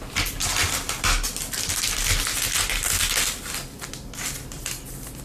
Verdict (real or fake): real